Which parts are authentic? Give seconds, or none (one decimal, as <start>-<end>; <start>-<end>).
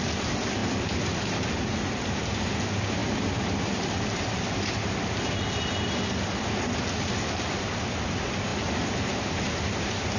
0.0-0.6; 2.2-3.0; 4.0-10.2